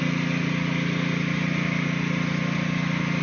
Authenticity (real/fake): real